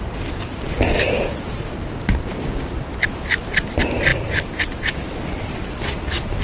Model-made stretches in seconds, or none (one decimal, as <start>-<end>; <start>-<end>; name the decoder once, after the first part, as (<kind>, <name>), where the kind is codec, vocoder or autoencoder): 4.1-4.9 (vocoder, BigVGAN v2)